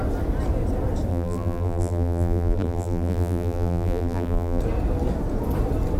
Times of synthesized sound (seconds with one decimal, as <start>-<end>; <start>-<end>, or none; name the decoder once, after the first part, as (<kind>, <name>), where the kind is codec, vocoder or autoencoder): 1.1-4.6 (vocoder, BigVGAN v2)